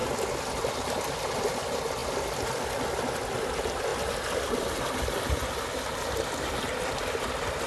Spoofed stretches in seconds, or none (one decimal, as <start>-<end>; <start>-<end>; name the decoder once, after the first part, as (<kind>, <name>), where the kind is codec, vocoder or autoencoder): none